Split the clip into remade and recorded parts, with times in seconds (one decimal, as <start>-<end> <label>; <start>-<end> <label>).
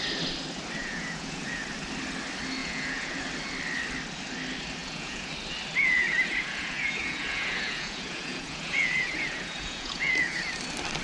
0.0-0.8 recorded; 0.8-1.6 remade; 1.6-2.6 recorded; 2.6-3.2 remade; 3.2-4.8 recorded; 4.8-5.3 remade; 5.3-5.8 recorded; 5.8-10.4 remade; 10.4-11.0 recorded